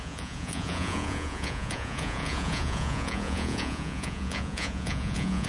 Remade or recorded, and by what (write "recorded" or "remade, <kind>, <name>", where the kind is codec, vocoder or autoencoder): remade, vocoder, Vocos